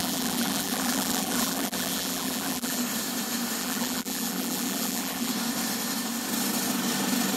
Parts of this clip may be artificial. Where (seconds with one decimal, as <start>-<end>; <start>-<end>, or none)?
0.0-2.8; 3.6-5.3